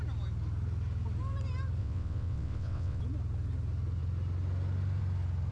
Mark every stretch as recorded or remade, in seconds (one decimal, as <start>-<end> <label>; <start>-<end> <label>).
0.0-1.8 recorded; 1.8-3.0 remade; 3.0-5.5 recorded

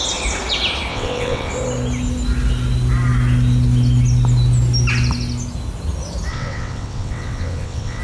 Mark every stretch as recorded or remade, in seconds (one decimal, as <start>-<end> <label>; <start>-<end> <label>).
0.0-0.9 recorded; 0.9-1.5 remade; 1.5-6.3 recorded; 6.3-8.0 remade

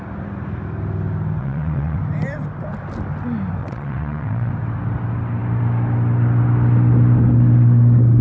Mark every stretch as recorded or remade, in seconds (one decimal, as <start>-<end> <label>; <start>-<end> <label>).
0.0-1.4 recorded; 1.4-2.0 remade; 2.0-3.6 recorded; 3.6-4.5 remade; 4.5-8.2 recorded

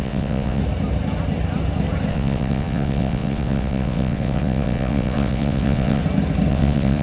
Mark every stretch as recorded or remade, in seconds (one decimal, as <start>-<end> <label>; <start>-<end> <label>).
0.0-0.6 remade; 0.6-2.1 recorded; 2.1-6.0 remade; 6.0-6.5 recorded; 6.5-7.0 remade

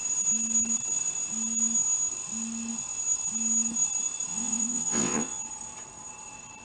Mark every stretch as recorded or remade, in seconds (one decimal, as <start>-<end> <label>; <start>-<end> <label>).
0.0-4.3 recorded; 4.3-5.4 remade; 5.4-6.6 recorded

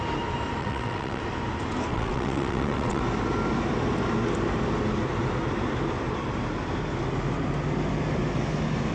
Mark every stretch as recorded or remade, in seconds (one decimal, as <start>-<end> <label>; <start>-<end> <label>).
0.0-0.6 recorded; 0.6-1.2 remade; 1.2-1.9 recorded; 1.9-3.0 remade; 3.0-8.9 recorded